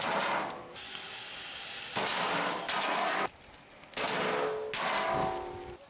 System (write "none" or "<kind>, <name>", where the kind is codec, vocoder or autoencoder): none